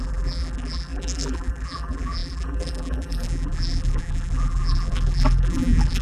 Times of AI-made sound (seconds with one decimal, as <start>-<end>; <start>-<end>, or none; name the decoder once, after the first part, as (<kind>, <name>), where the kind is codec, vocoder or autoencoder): 0.0-6.0 (vocoder, BigVGAN v2)